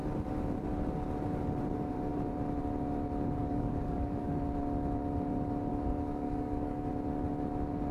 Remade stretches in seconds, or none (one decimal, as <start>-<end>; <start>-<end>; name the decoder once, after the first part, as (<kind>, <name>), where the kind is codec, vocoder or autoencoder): 3.4-4.3 (codec, DAC); 5.7-6.9